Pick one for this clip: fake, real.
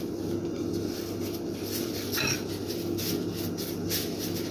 real